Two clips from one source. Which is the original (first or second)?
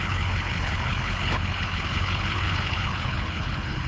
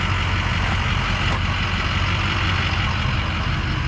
second